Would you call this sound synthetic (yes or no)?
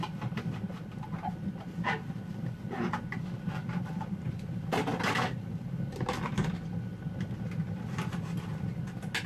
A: no